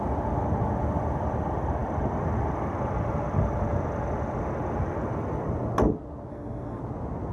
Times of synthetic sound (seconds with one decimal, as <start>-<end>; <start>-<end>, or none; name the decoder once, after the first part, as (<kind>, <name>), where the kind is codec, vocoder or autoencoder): 6.3-6.8 (codec, SNAC)